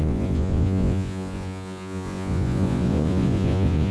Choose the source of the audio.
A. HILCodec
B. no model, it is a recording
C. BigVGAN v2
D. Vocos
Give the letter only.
D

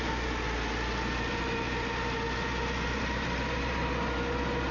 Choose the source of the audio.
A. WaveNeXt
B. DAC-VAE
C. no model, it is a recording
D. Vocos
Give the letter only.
C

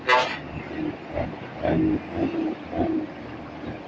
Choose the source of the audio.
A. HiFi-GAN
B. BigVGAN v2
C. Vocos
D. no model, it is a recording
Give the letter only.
D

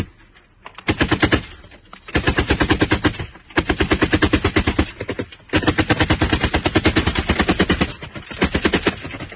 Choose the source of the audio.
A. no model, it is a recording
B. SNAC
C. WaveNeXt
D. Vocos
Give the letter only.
A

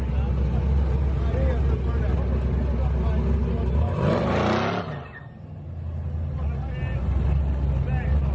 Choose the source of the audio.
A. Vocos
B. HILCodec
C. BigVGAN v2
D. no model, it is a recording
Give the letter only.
D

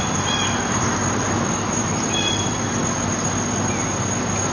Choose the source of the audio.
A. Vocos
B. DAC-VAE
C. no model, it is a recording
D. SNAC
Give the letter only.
C